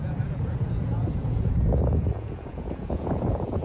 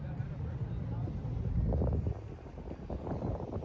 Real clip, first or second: second